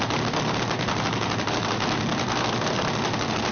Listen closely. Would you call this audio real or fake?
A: real